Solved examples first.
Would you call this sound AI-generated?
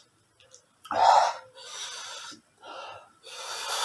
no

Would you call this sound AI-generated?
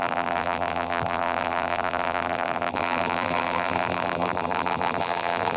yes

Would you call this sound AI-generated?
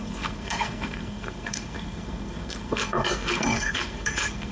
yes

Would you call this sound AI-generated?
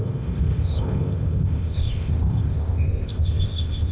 yes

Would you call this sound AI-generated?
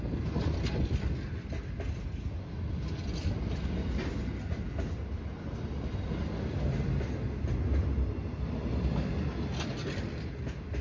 no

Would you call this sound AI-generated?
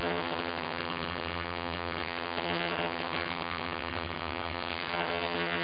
yes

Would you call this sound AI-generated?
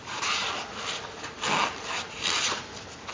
no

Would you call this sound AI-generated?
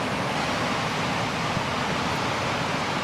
no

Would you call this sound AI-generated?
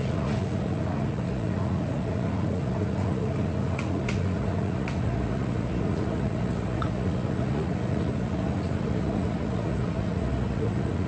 yes